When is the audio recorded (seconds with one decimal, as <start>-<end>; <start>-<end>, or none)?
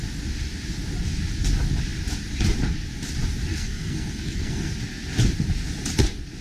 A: 0.0-3.5; 4.7-6.4